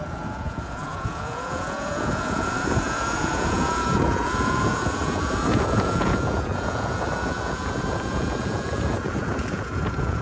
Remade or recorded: remade